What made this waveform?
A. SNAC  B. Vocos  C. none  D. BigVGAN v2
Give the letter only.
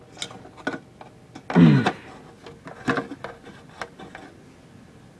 C